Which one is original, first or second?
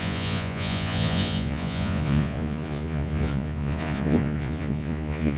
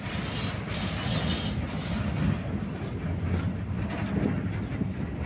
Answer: second